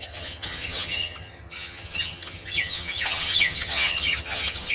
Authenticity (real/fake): fake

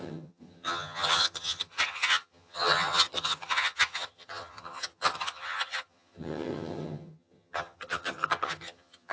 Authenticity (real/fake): fake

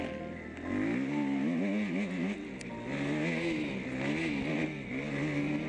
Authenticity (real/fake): real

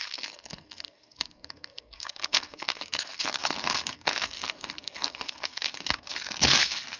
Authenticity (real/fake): fake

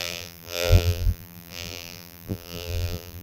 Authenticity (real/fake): fake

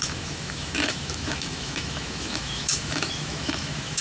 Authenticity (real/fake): fake